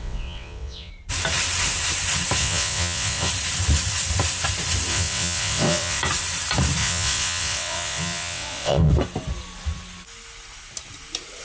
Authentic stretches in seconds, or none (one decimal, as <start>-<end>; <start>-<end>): 0.9-2.4; 3.3-4.9; 6.0-6.8; 8.9-11.4